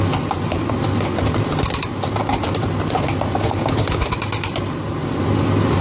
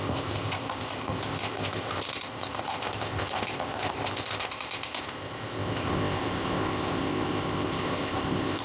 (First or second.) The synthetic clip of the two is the second